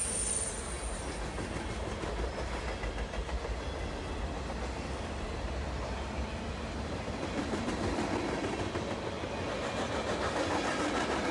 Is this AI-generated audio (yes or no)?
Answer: no